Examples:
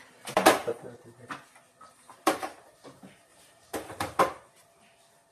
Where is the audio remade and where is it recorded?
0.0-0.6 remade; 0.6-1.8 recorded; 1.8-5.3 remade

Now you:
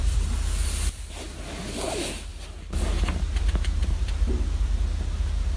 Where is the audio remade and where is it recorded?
0.0-3.8 recorded; 3.8-4.3 remade; 4.3-5.6 recorded

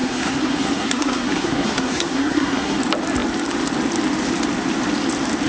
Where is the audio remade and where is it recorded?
0.0-2.8 remade; 2.8-5.5 recorded

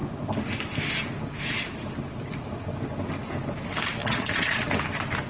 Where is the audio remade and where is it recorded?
0.0-4.0 recorded; 4.0-4.6 remade; 4.6-5.3 recorded

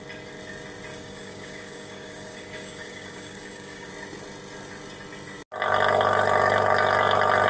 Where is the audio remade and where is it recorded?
0.0-0.9 recorded; 0.9-3.9 remade; 3.9-7.5 recorded

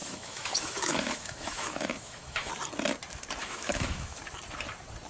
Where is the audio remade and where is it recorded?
0.0-2.5 remade; 2.5-3.4 recorded; 3.4-4.2 remade; 4.2-5.1 recorded